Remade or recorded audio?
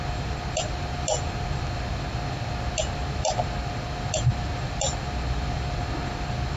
recorded